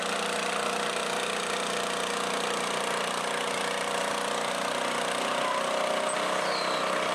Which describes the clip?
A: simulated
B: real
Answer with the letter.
B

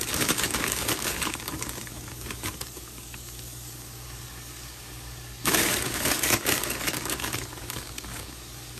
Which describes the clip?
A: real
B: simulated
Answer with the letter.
B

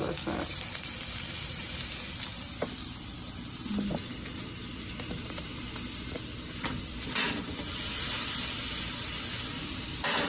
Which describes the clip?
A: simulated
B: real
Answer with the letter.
B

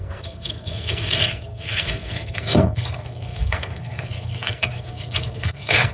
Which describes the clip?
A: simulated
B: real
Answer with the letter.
A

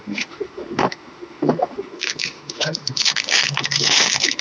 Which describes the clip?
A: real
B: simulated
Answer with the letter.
B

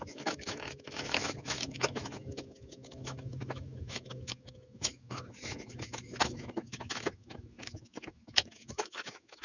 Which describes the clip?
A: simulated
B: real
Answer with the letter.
A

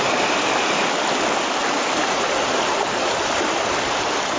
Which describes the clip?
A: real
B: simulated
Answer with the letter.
A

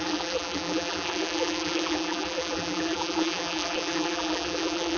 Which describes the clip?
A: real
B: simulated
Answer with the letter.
B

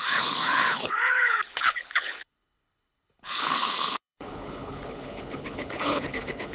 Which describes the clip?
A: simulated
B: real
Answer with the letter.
A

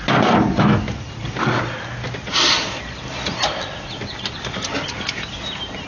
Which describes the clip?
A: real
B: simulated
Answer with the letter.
A